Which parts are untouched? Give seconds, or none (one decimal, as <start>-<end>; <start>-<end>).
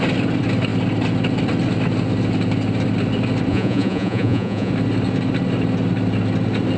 0.0-3.5; 4.7-6.8